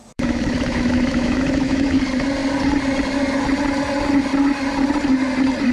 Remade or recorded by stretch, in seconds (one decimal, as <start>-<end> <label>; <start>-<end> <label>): 0.0-2.0 remade; 2.0-5.7 recorded